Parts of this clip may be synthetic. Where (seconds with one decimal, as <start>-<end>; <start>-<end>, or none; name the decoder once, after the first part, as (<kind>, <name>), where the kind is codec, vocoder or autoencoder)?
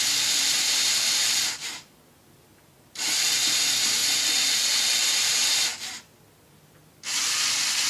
none